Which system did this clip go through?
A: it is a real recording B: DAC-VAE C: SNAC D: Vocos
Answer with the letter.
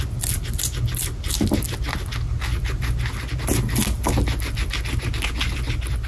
A